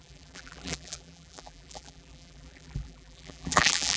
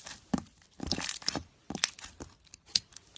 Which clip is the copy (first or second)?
first